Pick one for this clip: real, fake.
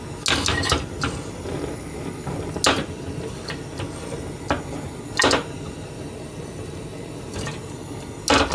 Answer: real